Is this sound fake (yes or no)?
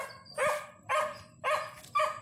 no